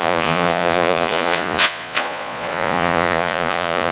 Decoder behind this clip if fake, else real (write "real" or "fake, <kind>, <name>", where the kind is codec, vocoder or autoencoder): fake, vocoder, Vocos